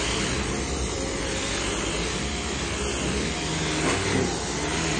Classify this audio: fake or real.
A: real